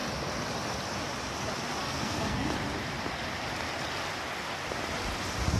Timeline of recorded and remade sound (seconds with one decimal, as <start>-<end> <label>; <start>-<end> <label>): 0.0-1.8 recorded; 1.8-2.5 remade; 2.5-5.6 recorded